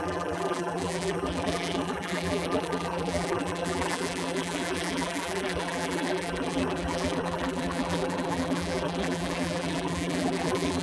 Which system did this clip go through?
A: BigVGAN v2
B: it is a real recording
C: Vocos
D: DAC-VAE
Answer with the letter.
A